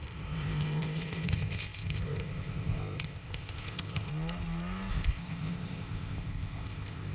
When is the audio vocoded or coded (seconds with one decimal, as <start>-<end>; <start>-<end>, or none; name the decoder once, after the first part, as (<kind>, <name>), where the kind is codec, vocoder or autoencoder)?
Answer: 0.0-4.1 (codec, ZipCodec); 4.9-7.1